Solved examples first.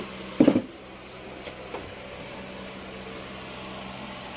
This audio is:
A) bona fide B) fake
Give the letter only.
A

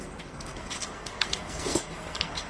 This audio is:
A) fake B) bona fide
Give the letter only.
A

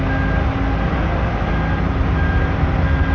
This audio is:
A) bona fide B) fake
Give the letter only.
A